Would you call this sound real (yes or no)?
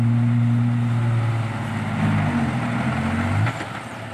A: yes